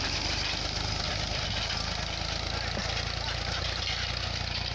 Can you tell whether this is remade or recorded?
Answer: recorded